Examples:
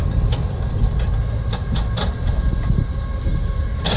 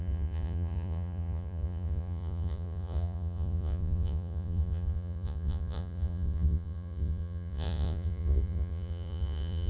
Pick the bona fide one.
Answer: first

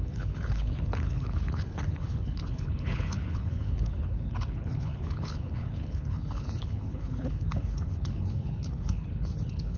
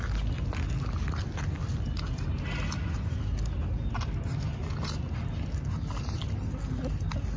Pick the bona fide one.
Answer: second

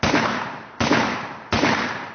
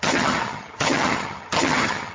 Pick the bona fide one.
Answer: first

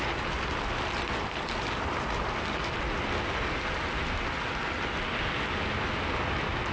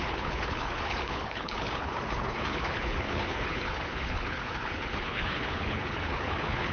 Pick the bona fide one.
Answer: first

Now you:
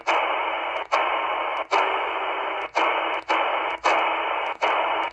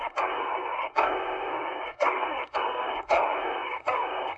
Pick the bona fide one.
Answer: first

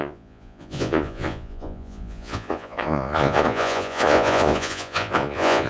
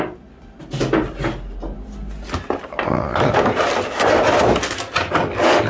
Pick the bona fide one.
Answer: second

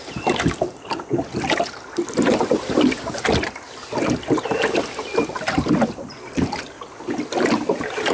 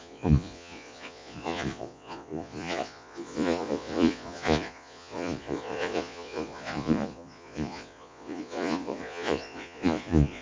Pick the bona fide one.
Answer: first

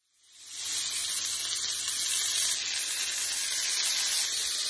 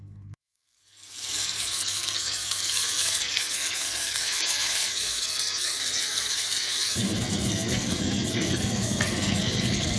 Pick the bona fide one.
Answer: first